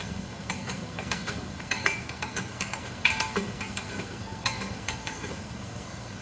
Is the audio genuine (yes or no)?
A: no